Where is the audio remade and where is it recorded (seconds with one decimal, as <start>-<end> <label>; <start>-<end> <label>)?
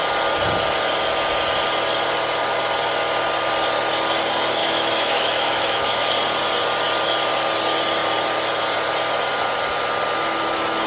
0.0-4.6 recorded; 4.6-6.1 remade; 6.1-10.9 recorded